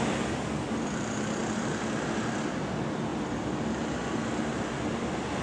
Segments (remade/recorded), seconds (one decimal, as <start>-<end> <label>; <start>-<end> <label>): 0.0-5.4 recorded